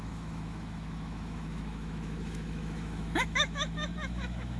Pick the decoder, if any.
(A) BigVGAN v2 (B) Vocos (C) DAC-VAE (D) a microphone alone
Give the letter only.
C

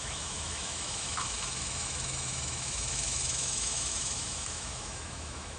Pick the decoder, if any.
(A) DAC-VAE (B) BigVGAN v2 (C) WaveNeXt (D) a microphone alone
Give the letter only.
A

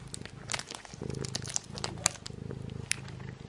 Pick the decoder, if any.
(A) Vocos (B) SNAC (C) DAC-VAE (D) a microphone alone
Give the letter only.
D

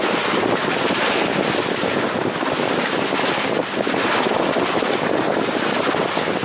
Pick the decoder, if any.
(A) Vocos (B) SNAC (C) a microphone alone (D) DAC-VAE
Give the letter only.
C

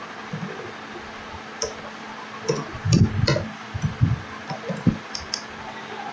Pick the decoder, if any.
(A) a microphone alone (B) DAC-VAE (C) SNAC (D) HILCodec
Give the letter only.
A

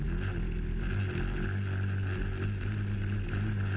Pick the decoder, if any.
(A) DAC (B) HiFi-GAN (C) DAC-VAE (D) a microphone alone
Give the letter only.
D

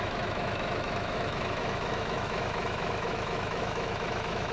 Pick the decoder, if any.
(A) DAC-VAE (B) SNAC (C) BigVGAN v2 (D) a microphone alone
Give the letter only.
A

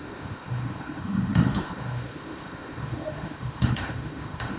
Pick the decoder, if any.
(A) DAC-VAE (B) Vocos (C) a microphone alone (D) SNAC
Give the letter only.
A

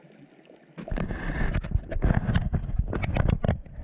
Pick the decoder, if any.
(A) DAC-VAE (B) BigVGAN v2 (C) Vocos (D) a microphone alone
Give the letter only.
D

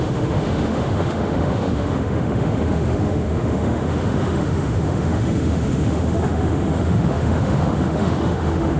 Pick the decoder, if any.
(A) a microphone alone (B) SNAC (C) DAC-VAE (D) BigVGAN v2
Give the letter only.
C